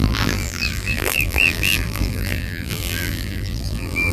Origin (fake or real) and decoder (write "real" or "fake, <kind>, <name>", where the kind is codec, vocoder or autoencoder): fake, vocoder, BigVGAN v2